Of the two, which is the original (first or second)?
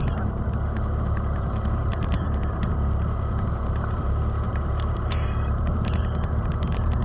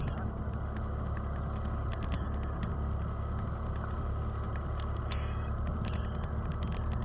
second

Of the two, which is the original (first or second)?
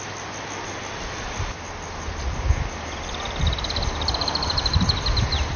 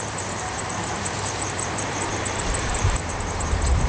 first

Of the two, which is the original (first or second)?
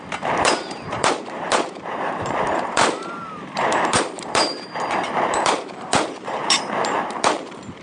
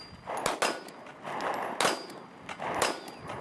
second